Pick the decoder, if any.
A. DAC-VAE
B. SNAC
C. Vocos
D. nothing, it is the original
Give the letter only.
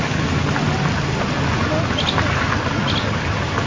D